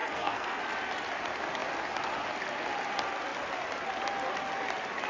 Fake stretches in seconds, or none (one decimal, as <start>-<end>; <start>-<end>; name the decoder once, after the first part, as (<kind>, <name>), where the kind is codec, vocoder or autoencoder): 0.0-0.6 (codec, SNAC)